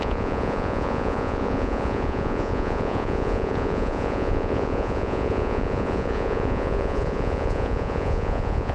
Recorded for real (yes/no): no